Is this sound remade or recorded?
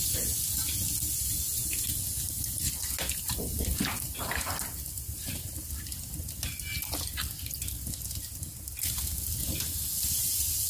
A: recorded